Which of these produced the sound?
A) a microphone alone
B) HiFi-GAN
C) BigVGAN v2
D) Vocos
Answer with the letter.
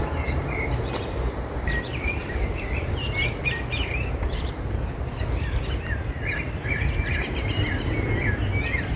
C